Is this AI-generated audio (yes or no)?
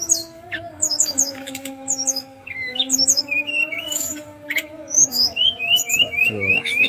yes